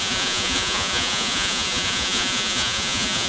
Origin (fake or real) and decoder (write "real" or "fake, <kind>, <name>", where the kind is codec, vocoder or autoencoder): fake, vocoder, Vocos